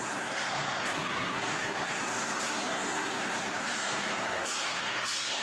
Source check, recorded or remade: remade